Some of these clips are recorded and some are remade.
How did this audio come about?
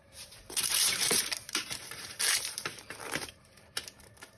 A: remade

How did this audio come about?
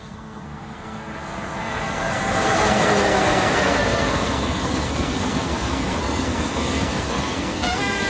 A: remade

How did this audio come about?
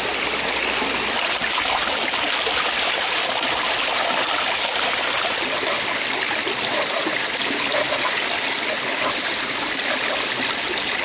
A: recorded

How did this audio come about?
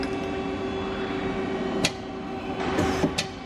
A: recorded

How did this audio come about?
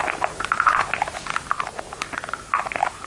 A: recorded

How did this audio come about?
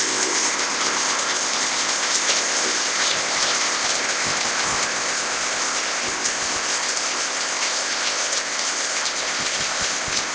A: remade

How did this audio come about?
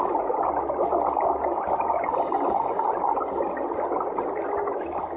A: recorded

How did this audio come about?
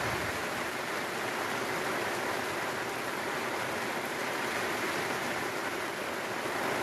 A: recorded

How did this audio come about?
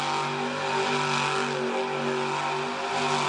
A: recorded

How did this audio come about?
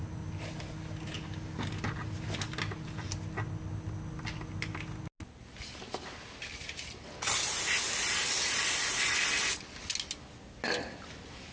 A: recorded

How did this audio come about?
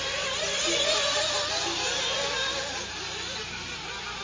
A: recorded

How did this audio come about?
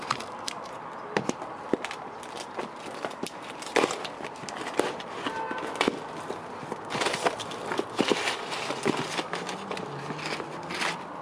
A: recorded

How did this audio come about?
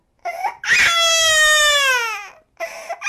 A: recorded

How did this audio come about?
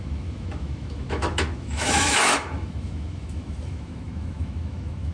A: remade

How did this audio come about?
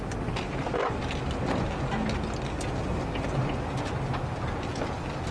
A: recorded